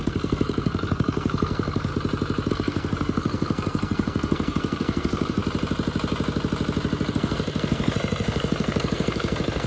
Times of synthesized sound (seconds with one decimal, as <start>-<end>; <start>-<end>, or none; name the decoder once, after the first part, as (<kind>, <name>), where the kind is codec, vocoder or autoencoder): 0.0-1.9 (codec, SNAC); 2.5-5.4; 7.1-9.7